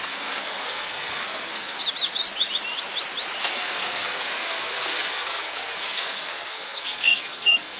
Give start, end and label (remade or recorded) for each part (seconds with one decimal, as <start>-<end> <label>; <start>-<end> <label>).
0.0-1.8 remade; 1.8-3.4 recorded; 3.4-7.8 remade